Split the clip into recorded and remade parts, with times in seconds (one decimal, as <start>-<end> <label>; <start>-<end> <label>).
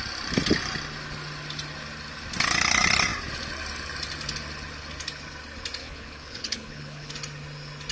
0.0-5.8 recorded; 5.8-7.1 remade; 7.1-7.9 recorded